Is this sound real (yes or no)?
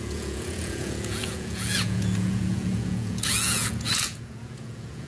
no